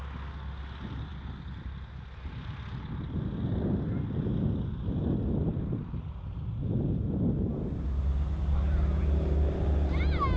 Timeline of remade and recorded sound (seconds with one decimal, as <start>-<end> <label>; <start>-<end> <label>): 0.0-10.4 recorded